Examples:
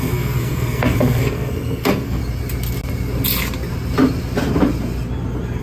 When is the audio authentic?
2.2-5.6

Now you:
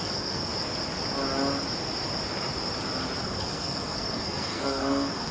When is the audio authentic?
0.5-3.2

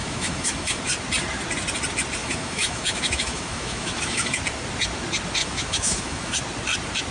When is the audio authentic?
0.8-2.2; 4.4-5.4; 6.4-7.1

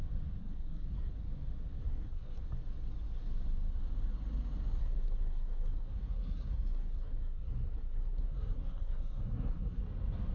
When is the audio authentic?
0.0-0.4; 1.1-1.8; 2.4-4.8; 9.8-10.3

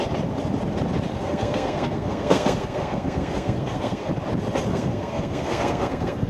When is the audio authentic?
0.0-1.1; 4.1-4.7